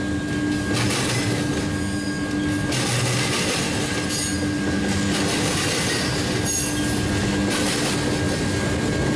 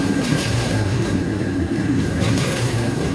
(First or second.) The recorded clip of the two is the first